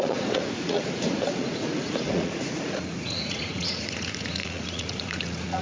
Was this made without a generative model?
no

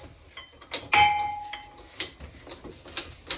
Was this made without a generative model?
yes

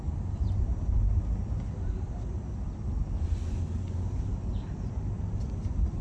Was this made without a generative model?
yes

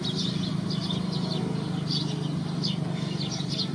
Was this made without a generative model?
yes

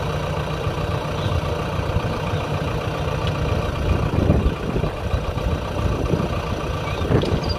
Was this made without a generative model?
yes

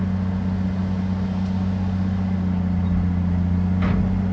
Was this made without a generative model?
yes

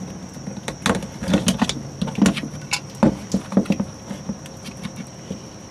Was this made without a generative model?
yes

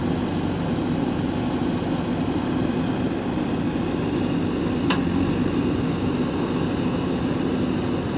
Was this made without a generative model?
yes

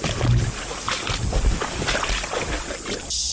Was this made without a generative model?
yes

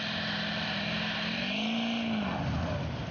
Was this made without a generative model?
yes